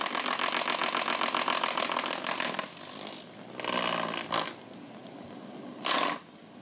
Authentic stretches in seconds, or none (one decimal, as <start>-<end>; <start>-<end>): 0.0-6.6